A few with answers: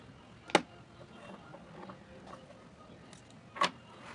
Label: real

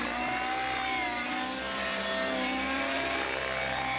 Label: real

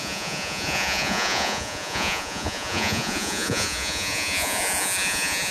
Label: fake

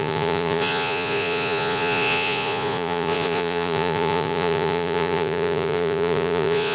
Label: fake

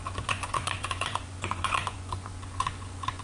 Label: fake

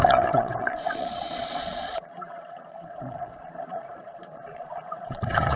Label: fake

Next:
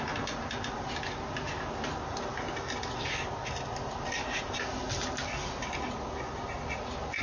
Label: real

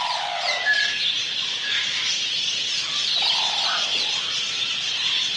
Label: real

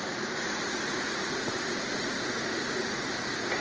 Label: fake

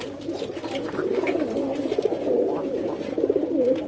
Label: real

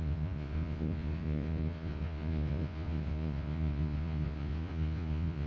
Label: fake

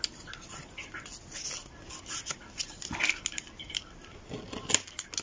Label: real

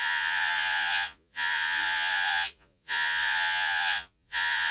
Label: fake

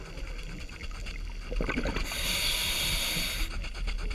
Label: real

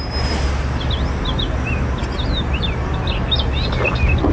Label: real